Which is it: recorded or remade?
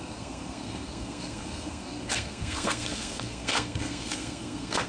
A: remade